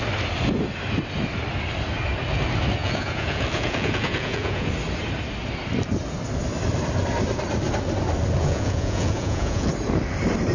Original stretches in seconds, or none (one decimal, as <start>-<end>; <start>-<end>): 0.0-2.8; 4.7-8.4; 9.7-10.5